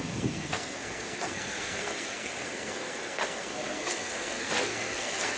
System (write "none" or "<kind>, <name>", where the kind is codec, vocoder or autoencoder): codec, SNAC